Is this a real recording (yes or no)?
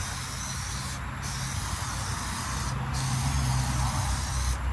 yes